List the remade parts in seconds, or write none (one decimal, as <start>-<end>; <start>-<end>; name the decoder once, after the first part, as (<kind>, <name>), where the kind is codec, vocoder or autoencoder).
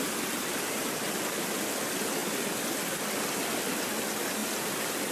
4.4-5.1 (vocoder, BigVGAN v2)